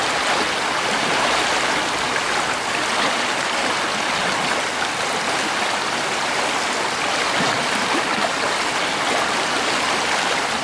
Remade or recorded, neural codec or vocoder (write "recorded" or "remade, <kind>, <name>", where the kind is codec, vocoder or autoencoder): recorded